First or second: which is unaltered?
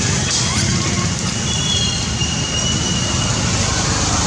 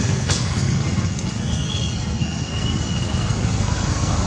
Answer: first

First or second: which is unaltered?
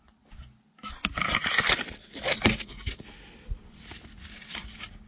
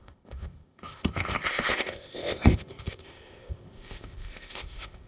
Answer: first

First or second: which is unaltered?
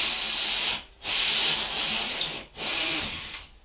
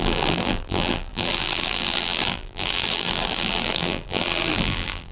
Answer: first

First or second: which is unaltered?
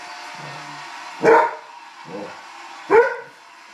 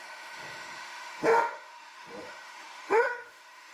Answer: first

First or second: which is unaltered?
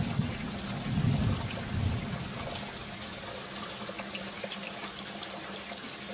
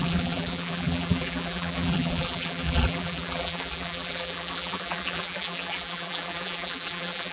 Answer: first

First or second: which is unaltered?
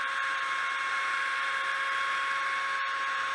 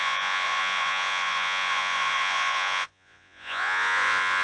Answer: first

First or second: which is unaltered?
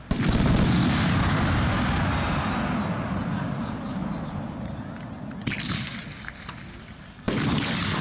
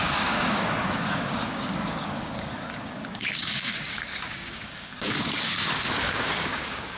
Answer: first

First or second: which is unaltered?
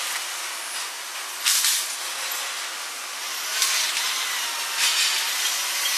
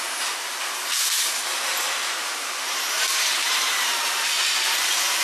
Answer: first